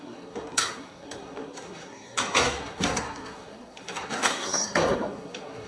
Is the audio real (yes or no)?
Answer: no